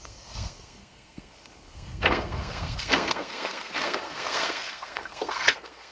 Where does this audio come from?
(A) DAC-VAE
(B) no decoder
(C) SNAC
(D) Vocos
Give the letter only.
C